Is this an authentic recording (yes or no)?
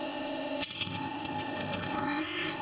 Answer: no